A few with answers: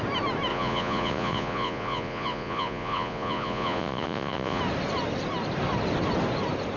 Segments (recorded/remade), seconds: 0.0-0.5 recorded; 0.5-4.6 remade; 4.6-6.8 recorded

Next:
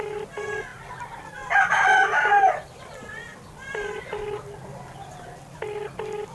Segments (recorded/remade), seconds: 0.0-6.3 recorded

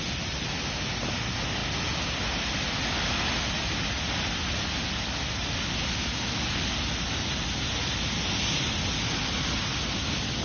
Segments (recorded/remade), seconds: 0.0-10.4 recorded